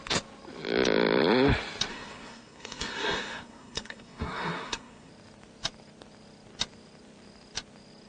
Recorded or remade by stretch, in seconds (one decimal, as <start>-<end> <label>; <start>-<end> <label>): 0.0-1.9 recorded; 1.9-5.1 remade; 5.1-8.1 recorded